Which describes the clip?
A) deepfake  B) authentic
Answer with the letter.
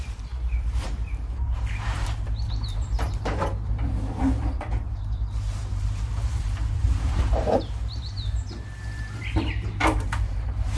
A